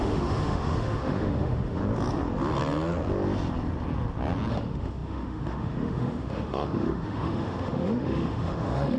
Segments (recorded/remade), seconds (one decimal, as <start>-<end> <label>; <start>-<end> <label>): 0.0-1.8 remade; 1.8-4.5 recorded; 4.5-9.0 remade